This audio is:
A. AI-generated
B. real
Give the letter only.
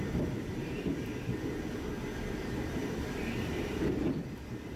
A